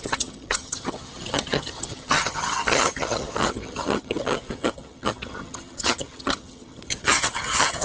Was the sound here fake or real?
fake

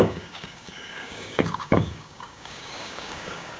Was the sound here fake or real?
fake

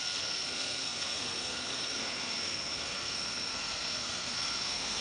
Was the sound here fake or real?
fake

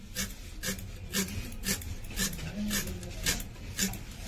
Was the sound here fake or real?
real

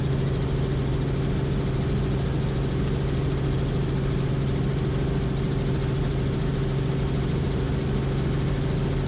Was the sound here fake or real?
real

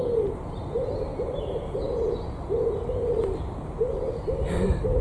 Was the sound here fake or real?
fake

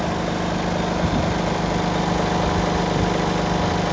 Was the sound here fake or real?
real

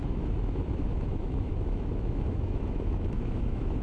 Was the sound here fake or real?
fake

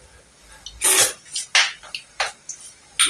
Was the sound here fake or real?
real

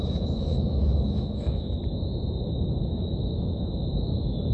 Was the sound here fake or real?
fake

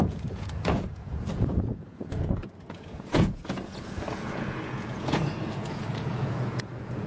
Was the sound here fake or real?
fake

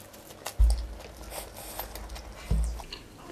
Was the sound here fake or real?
real